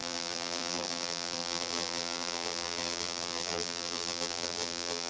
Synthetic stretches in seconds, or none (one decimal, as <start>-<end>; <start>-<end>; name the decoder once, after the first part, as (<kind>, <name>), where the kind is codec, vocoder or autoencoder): 0.0-5.1 (vocoder, BigVGAN v2)